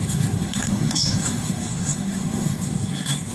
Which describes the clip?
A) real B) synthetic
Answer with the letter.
B